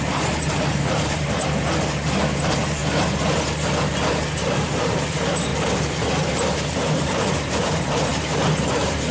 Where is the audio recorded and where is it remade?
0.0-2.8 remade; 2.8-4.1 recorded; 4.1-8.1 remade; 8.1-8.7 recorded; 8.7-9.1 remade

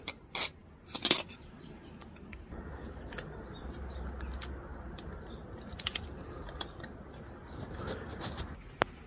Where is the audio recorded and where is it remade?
0.0-0.6 recorded; 0.6-3.4 remade; 3.4-4.7 recorded; 4.7-7.7 remade; 7.7-9.1 recorded

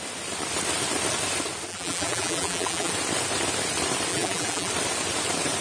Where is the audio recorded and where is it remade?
0.0-1.7 recorded; 1.7-2.9 remade; 2.9-4.1 recorded; 4.1-4.7 remade; 4.7-5.6 recorded

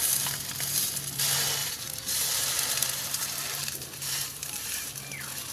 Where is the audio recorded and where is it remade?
0.0-1.6 recorded; 1.6-4.9 remade; 4.9-5.5 recorded

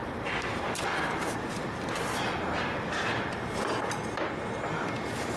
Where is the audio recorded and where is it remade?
0.0-1.9 remade; 1.9-5.4 recorded

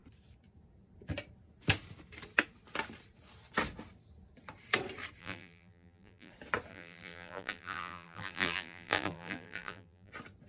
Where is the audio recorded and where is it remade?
0.0-5.2 recorded; 5.2-6.3 remade; 6.3-6.7 recorded; 6.7-10.1 remade; 10.1-10.5 recorded

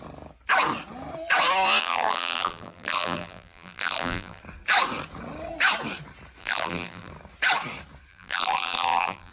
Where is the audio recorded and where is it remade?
0.0-1.8 recorded; 1.8-4.4 remade; 4.4-6.4 recorded; 6.4-7.1 remade; 7.1-8.1 recorded; 8.1-9.3 remade